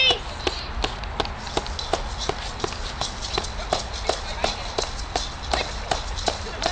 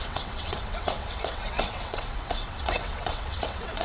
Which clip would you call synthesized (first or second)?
second